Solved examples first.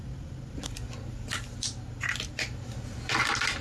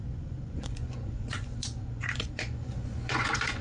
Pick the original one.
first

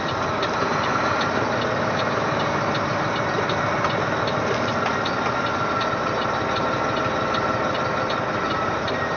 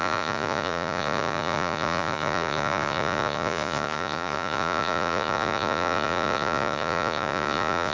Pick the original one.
first